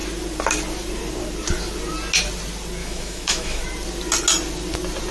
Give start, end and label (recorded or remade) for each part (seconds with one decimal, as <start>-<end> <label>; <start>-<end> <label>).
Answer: 0.0-2.8 recorded; 2.8-3.6 remade; 3.6-5.1 recorded